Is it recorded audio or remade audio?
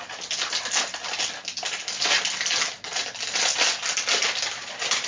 recorded